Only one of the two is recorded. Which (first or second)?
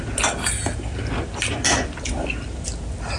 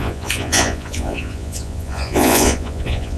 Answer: first